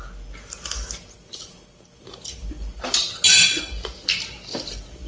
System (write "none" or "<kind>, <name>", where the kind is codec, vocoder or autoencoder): none